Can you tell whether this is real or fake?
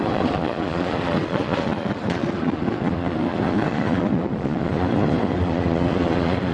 fake